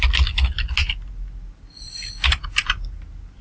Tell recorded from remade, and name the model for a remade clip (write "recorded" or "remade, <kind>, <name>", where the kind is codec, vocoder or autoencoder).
recorded